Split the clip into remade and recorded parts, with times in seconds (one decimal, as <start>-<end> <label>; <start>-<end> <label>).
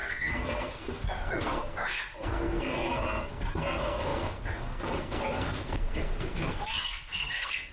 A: 0.0-7.7 remade